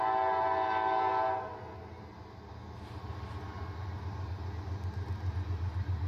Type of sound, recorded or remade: recorded